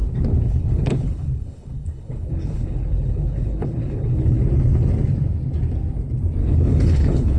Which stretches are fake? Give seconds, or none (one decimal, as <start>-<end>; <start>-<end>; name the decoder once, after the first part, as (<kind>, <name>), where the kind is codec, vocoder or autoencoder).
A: 0.0-4.4 (codec, HILCodec); 6.4-7.4